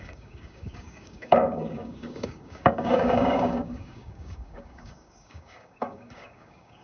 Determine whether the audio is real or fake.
fake